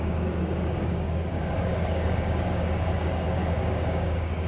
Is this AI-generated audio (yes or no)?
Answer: yes